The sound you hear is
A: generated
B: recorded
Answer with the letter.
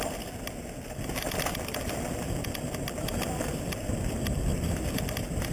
B